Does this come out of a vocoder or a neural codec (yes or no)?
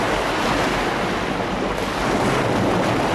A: no